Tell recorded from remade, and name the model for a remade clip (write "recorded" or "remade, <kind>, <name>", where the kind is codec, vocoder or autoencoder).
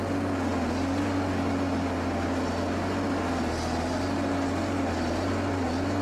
recorded